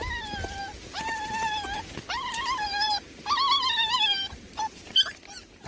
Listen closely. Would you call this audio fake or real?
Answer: real